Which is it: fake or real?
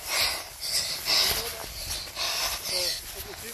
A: real